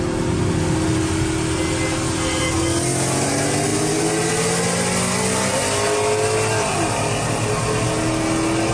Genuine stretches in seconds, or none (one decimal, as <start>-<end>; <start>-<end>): 0.0-8.7